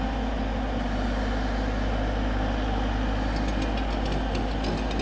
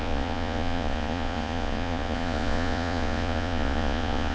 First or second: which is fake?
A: second